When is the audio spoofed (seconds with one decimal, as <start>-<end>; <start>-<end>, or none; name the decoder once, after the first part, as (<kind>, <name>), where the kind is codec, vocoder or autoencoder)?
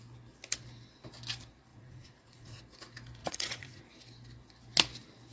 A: 1.7-2.6 (vocoder, Vocos); 3.2-3.8